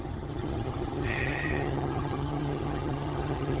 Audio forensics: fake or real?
fake